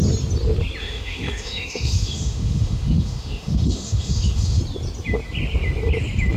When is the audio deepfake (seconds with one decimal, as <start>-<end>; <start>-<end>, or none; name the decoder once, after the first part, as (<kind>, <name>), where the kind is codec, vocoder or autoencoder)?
0.8-4.6 (autoencoder, DAC-VAE)